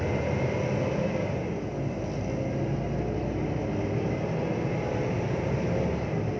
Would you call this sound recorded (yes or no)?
yes